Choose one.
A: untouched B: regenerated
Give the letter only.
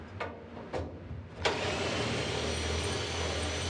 A